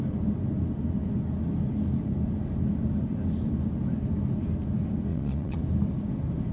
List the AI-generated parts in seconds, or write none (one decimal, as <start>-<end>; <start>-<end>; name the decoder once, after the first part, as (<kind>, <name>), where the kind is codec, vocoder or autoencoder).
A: 5.1-5.6 (vocoder, Vocos)